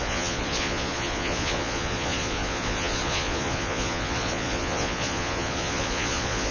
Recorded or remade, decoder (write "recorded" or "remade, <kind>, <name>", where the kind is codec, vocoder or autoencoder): remade, vocoder, Vocos